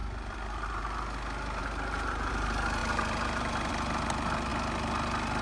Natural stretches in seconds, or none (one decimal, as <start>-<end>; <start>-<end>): 0.0-1.6; 2.3-2.8; 3.7-5.4